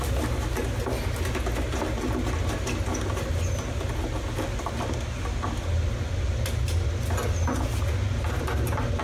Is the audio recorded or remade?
recorded